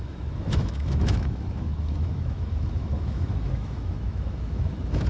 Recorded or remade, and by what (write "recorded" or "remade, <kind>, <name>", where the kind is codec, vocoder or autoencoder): remade, autoencoder, DAC-VAE